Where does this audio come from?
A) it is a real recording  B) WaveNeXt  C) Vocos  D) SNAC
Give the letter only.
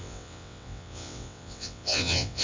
B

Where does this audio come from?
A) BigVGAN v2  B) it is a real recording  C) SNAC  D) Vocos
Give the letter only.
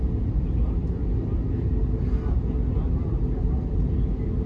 B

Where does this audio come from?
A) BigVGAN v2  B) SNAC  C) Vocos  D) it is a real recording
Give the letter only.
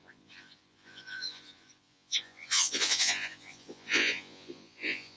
C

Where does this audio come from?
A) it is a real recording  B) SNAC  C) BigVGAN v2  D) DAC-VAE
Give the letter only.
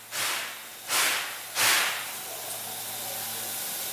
A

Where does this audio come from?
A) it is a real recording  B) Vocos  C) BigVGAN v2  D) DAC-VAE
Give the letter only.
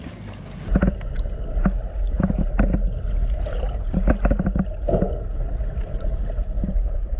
A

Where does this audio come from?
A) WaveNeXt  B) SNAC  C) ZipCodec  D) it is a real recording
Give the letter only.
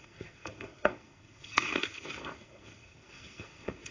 B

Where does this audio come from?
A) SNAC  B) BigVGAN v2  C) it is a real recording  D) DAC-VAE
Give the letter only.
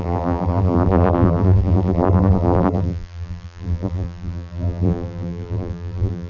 B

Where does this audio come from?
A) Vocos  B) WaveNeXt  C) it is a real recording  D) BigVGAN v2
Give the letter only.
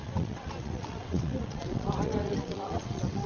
B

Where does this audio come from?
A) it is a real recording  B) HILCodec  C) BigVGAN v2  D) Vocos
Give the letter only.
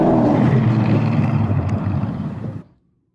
C